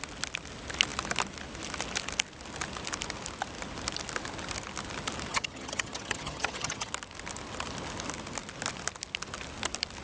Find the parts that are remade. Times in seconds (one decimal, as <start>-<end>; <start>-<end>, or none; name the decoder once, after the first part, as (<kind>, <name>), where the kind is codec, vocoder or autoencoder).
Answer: 5.3-6.9 (vocoder, HiFi-GAN)